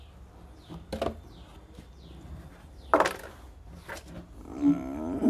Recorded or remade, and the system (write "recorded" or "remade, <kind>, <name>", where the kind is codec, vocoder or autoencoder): recorded